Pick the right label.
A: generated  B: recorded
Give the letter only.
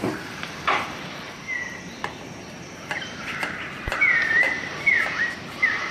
A